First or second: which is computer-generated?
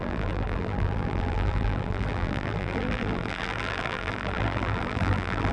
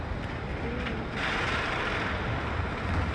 first